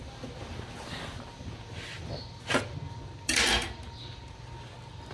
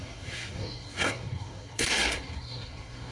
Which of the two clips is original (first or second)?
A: first